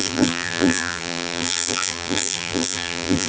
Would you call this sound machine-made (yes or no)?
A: yes